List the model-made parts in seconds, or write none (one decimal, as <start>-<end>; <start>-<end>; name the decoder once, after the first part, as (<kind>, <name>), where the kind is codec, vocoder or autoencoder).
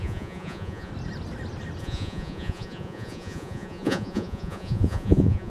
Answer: 0.0-0.9 (vocoder, Vocos); 1.8-5.5